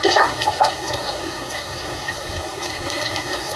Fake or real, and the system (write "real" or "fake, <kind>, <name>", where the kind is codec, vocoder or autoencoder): fake, codec, SNAC